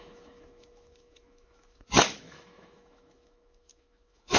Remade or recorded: remade